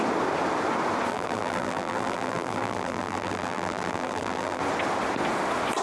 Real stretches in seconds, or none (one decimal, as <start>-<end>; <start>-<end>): 0.0-1.1; 4.6-5.8